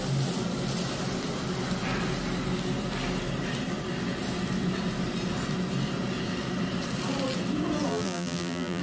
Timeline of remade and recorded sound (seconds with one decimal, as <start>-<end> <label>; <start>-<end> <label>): 0.0-7.9 recorded; 7.9-8.8 remade